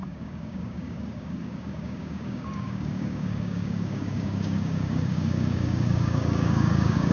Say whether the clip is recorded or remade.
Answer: remade